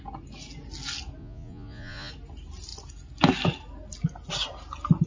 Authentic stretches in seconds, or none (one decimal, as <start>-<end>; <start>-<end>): 0.0-1.2; 2.1-5.1